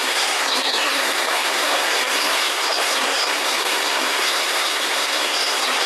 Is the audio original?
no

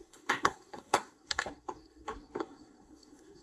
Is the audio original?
no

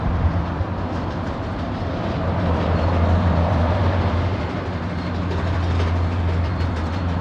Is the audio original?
no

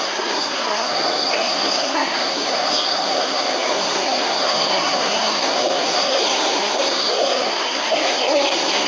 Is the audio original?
no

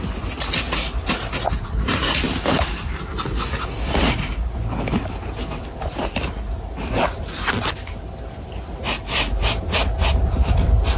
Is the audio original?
yes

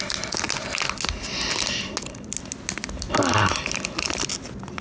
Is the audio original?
yes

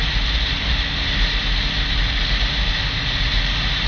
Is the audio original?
yes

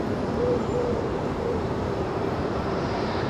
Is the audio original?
no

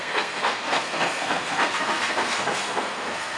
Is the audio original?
no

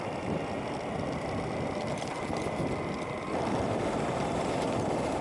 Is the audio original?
yes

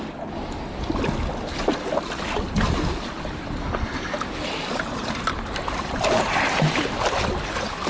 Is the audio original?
yes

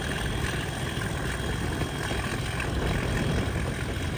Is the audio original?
yes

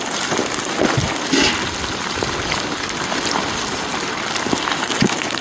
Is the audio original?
yes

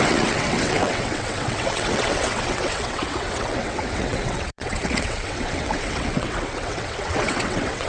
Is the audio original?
no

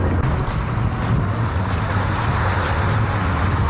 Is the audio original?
yes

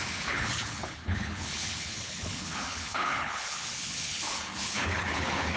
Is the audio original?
no